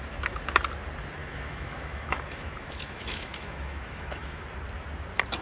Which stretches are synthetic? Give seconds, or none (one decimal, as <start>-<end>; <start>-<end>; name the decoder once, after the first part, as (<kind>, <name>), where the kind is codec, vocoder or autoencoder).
1.2-4.4 (autoencoder, DAC-VAE)